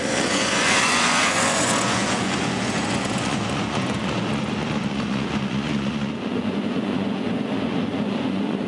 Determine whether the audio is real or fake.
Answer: fake